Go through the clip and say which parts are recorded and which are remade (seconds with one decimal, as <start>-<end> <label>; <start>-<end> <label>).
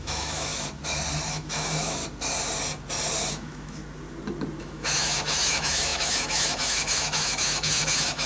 0.0-0.5 remade; 0.5-1.3 recorded; 1.3-2.0 remade; 2.0-3.3 recorded; 3.3-3.8 remade; 3.8-4.6 recorded; 4.6-8.3 remade